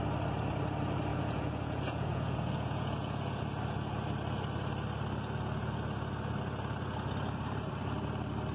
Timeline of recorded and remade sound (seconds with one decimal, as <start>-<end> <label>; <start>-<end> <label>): 0.0-1.1 recorded; 1.1-3.4 remade; 3.4-8.5 recorded